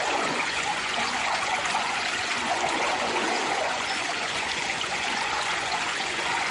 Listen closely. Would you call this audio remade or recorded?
remade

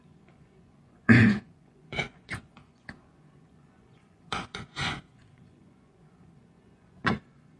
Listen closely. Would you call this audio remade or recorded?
remade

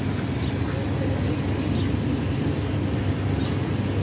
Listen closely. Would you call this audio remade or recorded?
recorded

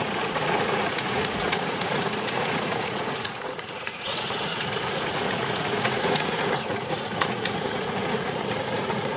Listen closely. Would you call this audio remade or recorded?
remade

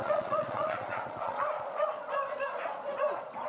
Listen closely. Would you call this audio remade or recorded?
remade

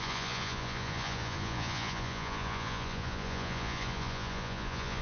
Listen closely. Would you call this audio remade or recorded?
remade